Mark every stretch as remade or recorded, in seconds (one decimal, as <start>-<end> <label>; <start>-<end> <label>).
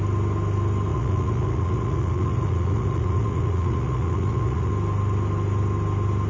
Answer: 0.0-0.9 recorded; 0.9-4.7 remade; 4.7-6.3 recorded